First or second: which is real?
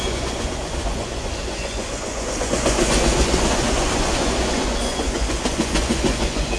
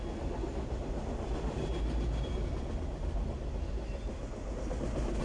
second